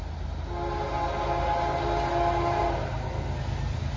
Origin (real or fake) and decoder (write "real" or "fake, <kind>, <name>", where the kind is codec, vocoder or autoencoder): real